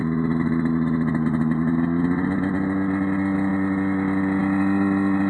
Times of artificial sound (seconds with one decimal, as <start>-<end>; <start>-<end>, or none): none